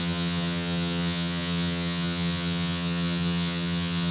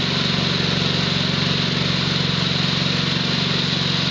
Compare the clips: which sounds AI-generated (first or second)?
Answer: first